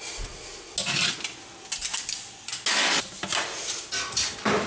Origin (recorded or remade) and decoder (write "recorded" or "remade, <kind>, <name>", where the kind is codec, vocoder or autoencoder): recorded